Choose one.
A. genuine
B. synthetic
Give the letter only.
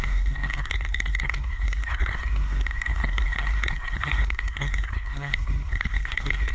B